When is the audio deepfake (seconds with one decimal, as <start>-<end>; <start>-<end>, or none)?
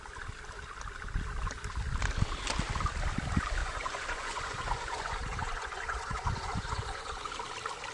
3.6-7.3